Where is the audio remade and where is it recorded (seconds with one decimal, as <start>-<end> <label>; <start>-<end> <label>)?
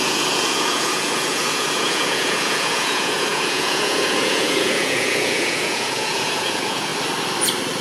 0.0-6.9 remade; 6.9-7.8 recorded